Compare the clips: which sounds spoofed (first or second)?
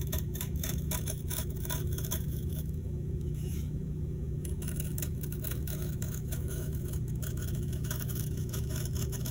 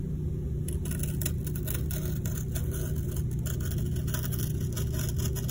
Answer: first